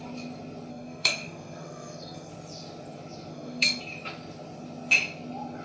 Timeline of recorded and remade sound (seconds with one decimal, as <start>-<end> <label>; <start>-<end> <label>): 0.0-0.7 recorded; 0.7-2.3 remade; 2.3-3.3 recorded; 3.3-3.8 remade; 3.8-5.6 recorded